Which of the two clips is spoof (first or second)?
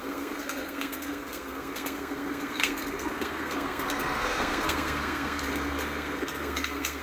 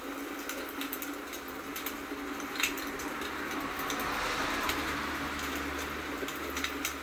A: first